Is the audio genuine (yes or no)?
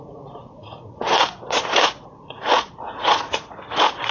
no